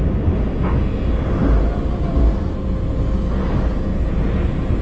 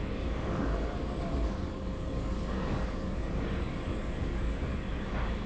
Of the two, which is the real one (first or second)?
first